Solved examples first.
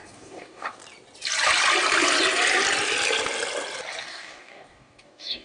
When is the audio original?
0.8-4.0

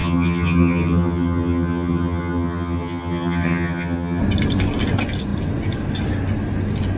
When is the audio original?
4.2-7.0